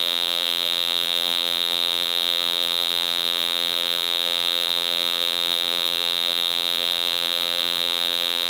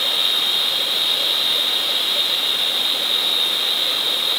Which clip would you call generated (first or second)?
first